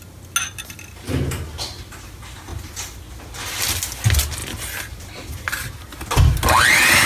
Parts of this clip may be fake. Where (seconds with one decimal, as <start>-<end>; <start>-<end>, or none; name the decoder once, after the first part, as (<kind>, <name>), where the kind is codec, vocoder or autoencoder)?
none